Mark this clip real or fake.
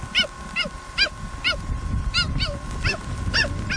real